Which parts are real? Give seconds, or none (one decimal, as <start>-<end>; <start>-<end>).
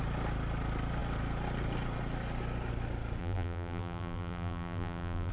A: 0.0-3.2